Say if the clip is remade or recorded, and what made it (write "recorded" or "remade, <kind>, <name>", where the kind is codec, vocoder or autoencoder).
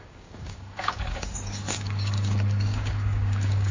remade, codec, DAC